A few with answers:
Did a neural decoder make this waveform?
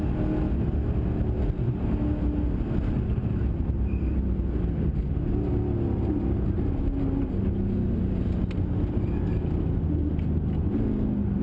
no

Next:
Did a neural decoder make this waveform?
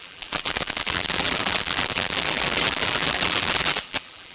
yes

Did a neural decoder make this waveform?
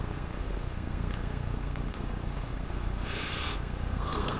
yes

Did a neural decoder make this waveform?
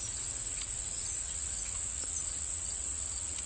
yes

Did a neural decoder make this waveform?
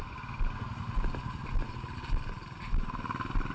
no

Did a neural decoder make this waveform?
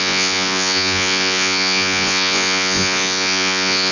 yes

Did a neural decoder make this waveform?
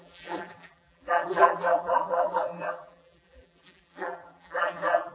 yes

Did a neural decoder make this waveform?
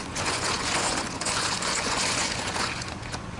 yes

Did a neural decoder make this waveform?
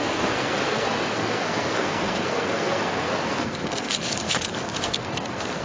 yes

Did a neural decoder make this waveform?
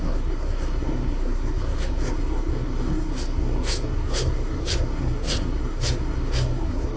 yes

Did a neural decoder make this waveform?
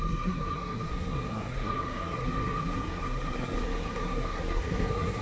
yes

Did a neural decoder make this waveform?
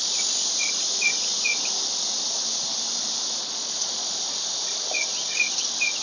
no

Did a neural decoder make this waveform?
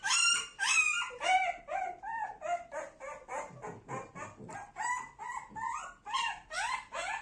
no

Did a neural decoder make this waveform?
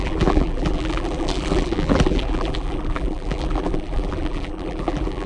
yes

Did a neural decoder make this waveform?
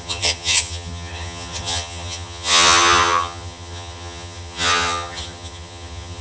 yes